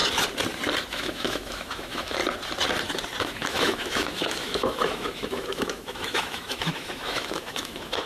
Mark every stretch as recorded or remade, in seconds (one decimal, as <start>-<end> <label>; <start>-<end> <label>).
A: 0.0-0.9 recorded; 0.9-2.2 remade; 2.2-3.2 recorded; 3.2-8.1 remade